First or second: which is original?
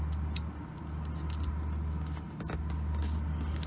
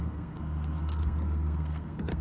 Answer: first